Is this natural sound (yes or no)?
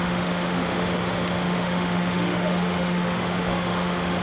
no